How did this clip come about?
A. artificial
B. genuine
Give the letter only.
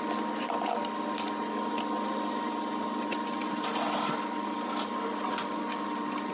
B